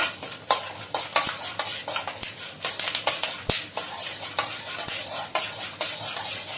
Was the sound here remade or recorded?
recorded